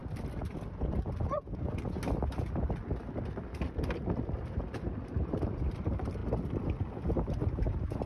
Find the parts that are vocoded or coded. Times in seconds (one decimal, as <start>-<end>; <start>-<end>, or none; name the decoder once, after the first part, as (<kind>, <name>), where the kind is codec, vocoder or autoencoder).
4.2-6.2 (vocoder, BigVGAN v2); 6.8-8.1